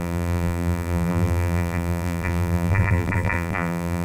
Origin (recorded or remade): remade